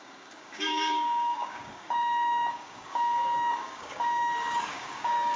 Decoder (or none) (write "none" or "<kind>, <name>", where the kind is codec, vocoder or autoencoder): codec, DAC